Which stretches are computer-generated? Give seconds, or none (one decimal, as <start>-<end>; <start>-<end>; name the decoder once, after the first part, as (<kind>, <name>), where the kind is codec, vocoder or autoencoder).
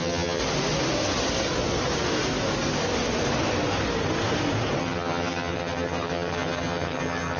0.0-0.4 (vocoder, HiFi-GAN); 4.8-7.4